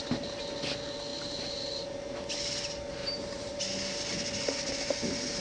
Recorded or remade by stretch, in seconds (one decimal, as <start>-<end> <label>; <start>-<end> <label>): 0.0-3.0 recorded; 3.0-3.6 remade; 3.6-5.4 recorded